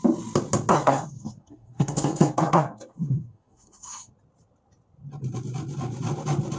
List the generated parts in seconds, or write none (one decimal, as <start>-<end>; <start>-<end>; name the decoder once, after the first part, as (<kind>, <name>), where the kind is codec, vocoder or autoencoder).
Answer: 0.7-4.1 (codec, SNAC)